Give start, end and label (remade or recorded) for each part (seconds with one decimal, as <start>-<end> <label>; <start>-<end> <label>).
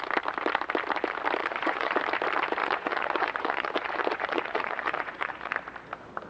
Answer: 0.0-1.4 recorded; 1.4-2.0 remade; 2.0-2.6 recorded; 2.6-5.5 remade; 5.5-6.3 recorded